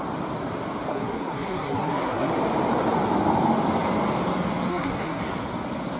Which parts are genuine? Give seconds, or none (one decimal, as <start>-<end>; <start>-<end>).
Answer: 0.0-0.9; 2.3-4.7; 5.2-6.0